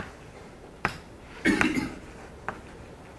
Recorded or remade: recorded